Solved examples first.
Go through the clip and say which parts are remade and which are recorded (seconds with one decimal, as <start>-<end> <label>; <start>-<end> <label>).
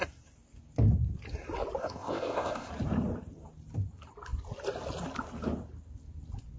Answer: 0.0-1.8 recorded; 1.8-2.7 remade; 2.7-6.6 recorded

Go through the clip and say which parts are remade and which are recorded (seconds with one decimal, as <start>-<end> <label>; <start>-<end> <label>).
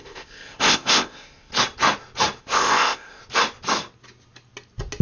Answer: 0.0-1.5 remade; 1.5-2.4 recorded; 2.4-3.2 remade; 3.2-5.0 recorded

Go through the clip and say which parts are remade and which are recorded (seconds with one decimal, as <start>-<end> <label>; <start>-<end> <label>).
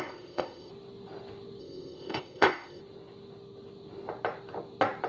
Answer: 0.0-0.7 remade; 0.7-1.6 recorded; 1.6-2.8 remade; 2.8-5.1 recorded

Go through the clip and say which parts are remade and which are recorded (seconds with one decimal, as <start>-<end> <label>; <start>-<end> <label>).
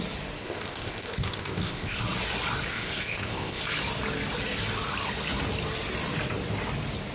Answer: 0.0-0.4 recorded; 0.4-2.0 remade; 2.0-2.7 recorded; 2.7-3.6 remade; 3.6-7.1 recorded